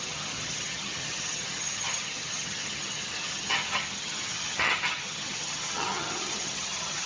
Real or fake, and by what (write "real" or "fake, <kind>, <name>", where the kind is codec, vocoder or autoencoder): fake, vocoder, HiFi-GAN